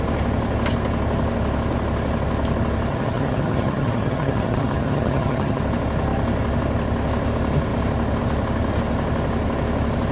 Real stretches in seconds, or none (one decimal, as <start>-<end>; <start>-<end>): 0.0-2.9; 5.6-10.1